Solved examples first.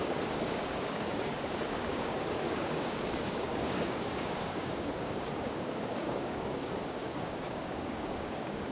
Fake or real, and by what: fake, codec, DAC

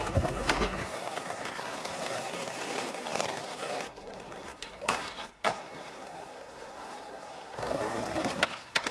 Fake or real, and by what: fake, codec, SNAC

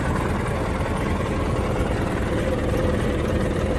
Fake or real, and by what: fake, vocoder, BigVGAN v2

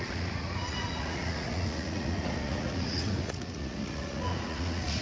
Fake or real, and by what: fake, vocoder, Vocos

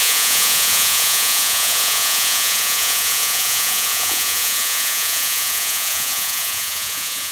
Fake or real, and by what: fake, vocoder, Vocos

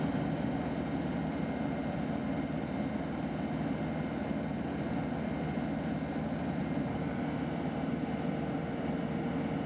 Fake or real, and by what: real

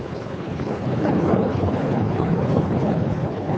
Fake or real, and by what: fake, codec, HILCodec